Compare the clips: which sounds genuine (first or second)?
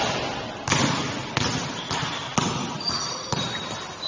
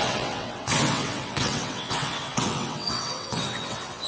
first